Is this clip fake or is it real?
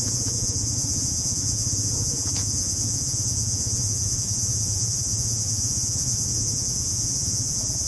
fake